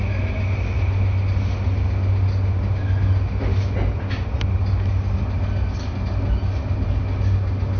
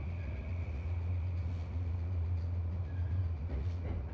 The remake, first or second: second